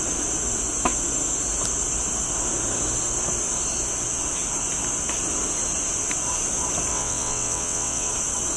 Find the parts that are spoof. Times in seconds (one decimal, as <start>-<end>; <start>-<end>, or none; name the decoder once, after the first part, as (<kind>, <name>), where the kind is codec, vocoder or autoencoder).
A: 6.9-8.1 (vocoder, WaveNeXt)